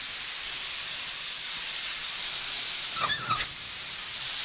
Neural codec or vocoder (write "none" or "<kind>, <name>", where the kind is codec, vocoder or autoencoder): none